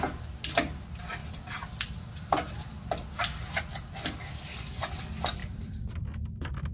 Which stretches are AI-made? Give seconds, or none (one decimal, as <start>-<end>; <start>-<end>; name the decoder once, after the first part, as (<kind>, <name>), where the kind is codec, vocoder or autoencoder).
1.2-3.6 (vocoder, BigVGAN v2); 5.4-6.0